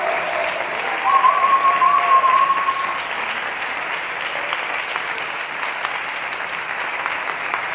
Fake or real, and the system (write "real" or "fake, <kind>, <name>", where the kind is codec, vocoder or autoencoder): real